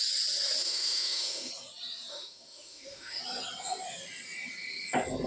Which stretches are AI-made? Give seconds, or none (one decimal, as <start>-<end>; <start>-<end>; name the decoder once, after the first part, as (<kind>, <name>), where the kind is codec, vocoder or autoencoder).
0.6-1.5 (autoencoder, DAC-VAE); 2.1-3.2